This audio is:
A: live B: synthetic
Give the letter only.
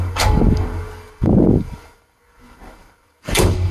B